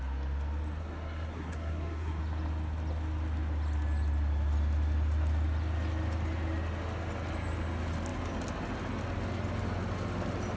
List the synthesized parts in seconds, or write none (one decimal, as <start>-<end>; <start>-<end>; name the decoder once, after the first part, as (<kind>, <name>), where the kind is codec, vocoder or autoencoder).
0.8-2.2 (codec, SNAC)